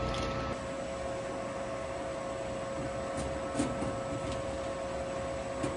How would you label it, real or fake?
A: real